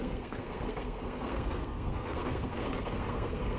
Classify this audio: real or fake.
fake